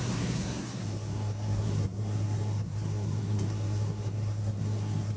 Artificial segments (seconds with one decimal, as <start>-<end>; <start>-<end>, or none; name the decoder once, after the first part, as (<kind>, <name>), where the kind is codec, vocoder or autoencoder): 0.0-5.2 (codec, SNAC)